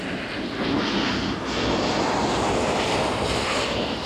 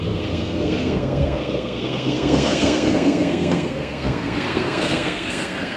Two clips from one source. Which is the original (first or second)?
first